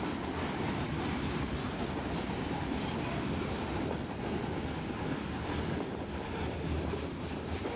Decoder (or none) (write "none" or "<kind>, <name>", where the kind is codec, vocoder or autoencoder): none